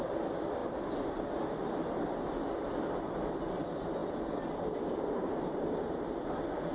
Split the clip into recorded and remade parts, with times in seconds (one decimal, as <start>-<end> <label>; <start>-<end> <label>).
0.0-6.7 recorded